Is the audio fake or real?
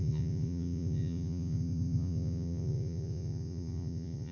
fake